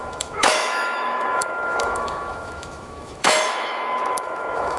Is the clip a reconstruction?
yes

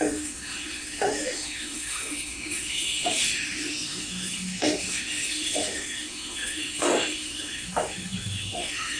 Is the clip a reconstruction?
yes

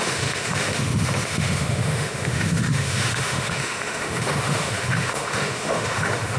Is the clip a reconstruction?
yes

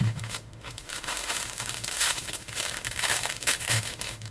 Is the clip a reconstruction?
yes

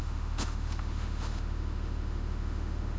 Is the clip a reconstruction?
yes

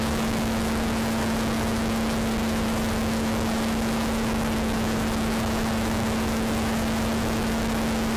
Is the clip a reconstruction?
yes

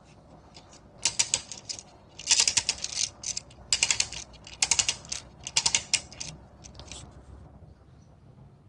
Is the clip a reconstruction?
no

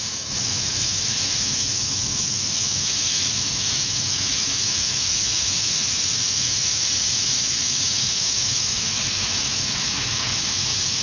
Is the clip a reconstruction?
yes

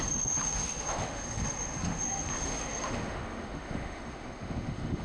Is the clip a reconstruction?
yes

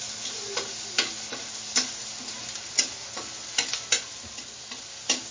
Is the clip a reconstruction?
no